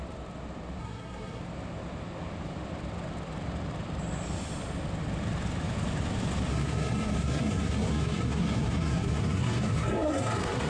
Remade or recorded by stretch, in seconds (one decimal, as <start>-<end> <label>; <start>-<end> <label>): 0.0-0.8 recorded; 0.8-1.4 remade; 1.4-6.5 recorded; 6.5-10.7 remade